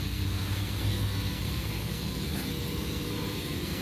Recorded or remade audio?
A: remade